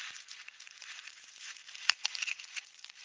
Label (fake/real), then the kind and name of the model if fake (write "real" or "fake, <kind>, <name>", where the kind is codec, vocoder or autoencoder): fake, vocoder, Vocos